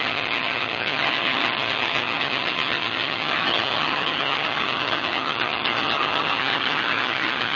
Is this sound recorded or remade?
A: remade